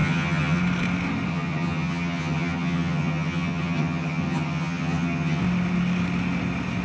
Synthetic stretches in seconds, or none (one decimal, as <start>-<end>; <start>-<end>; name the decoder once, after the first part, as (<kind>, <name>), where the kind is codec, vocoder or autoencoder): 0.0-0.6 (vocoder, HiFi-GAN); 1.3-5.4